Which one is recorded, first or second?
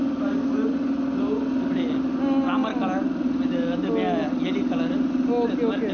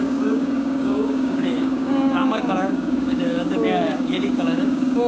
first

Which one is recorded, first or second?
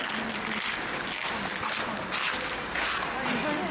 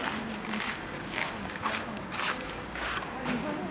first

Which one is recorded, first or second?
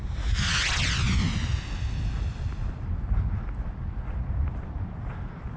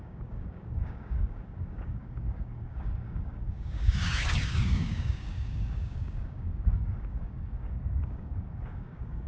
first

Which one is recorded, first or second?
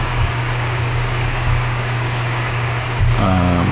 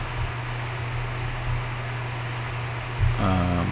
second